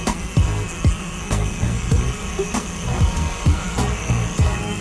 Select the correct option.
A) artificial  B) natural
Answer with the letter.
A